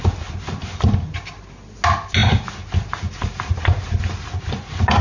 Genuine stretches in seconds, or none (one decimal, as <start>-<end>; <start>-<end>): 0.0-5.0